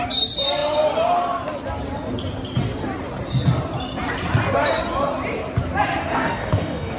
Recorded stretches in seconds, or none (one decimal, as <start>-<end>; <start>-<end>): 0.0-6.0